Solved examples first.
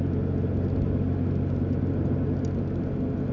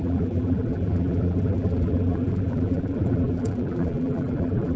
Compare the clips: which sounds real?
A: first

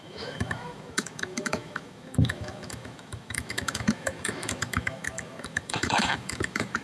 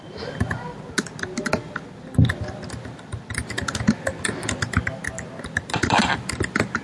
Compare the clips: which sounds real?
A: second